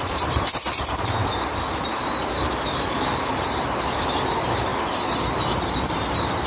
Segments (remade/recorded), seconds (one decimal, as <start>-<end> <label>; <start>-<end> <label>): 0.0-1.2 remade; 1.2-1.9 recorded; 1.9-4.7 remade; 4.7-5.6 recorded; 5.6-6.5 remade